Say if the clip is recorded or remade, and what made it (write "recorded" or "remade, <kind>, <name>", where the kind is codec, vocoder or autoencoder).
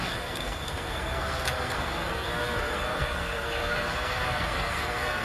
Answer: remade, codec, SNAC